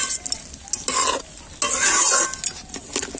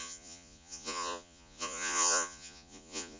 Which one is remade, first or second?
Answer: second